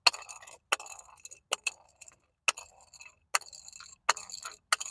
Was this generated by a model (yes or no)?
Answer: no